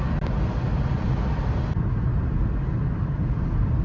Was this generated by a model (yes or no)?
no